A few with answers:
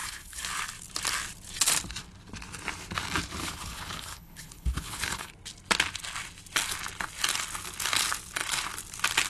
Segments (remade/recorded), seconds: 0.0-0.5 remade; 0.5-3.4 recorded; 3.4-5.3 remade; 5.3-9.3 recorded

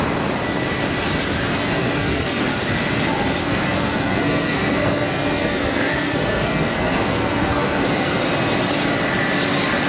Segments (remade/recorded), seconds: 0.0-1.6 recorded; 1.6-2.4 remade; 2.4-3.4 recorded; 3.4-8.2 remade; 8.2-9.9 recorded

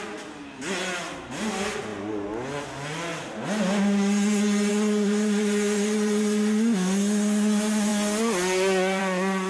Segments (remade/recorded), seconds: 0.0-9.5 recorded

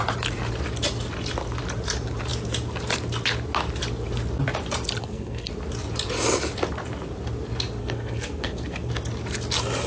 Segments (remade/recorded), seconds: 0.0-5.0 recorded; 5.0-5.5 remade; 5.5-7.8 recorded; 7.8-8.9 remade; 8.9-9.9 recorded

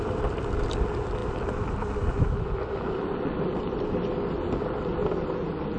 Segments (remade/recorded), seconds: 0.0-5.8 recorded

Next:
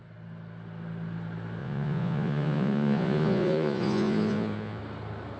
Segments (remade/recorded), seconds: 0.0-1.6 recorded; 1.6-4.8 remade; 4.8-5.4 recorded